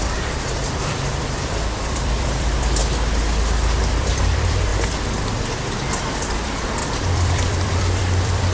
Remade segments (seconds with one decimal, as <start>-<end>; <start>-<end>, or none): 0.0-2.8; 3.8-4.7; 5.9-8.5